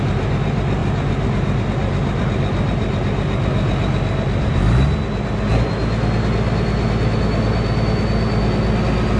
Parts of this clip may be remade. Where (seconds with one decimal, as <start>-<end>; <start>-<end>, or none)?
none